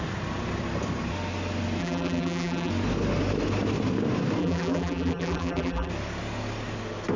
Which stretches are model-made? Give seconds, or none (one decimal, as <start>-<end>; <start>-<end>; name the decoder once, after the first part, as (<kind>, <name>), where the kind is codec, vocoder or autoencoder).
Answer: 1.8-2.7 (vocoder, BigVGAN v2); 4.4-5.9